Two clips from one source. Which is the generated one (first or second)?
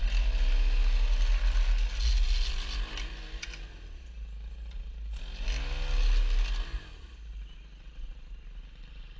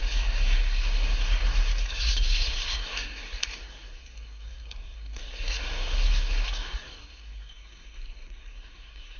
second